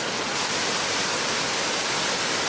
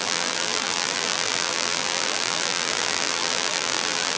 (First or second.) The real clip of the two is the first